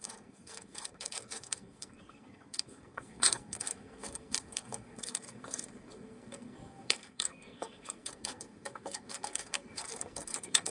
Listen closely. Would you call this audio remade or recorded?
remade